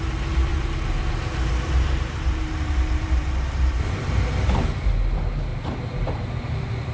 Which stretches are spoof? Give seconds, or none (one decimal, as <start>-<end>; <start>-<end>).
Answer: 0.5-4.6; 5.5-6.3